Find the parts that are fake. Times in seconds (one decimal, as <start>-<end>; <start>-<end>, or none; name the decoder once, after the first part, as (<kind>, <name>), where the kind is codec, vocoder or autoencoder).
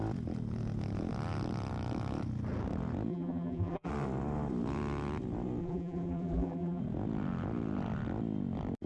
3.1-3.9 (vocoder, BigVGAN v2); 5.6-6.8